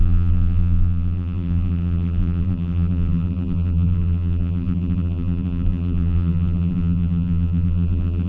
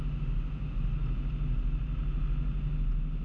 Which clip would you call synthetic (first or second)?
first